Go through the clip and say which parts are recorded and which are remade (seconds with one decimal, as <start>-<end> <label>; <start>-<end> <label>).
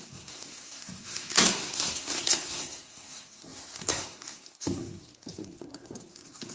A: 0.0-6.5 remade